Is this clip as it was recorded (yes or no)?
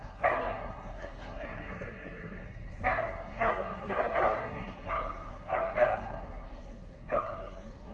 no